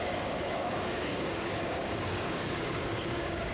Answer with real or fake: fake